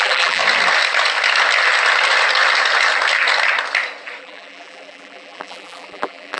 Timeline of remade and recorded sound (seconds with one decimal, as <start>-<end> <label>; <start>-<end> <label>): 0.0-0.4 remade; 0.4-4.2 recorded; 4.2-6.4 remade